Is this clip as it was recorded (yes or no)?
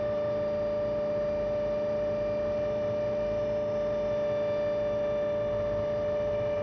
yes